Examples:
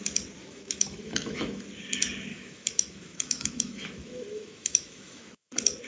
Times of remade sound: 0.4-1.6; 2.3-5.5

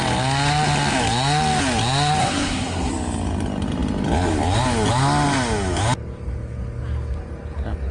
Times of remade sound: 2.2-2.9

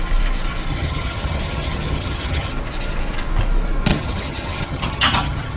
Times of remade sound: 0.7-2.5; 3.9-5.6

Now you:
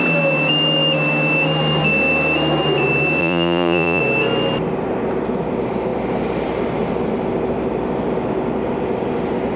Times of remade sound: 3.2-4.0